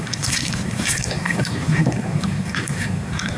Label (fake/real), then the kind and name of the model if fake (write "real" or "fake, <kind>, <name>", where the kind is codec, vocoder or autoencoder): fake, codec, SNAC